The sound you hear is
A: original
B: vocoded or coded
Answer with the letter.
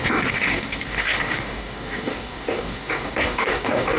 B